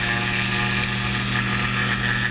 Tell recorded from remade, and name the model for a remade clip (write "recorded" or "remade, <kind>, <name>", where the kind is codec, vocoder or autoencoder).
recorded